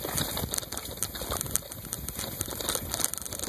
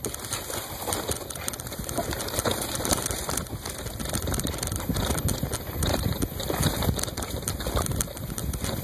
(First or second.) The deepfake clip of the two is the second